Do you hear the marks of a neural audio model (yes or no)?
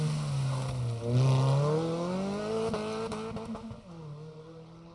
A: no